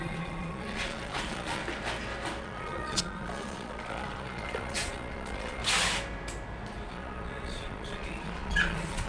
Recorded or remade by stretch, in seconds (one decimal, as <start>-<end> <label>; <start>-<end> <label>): 0.0-1.6 remade; 1.6-2.4 recorded; 2.4-5.6 remade; 5.6-6.9 recorded; 6.9-9.1 remade